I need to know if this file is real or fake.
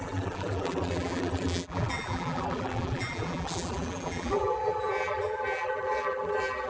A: fake